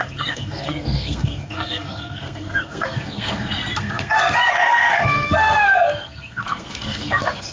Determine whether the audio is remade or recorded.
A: remade